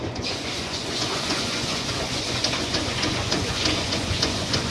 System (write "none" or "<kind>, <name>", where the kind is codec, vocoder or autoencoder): vocoder, Vocos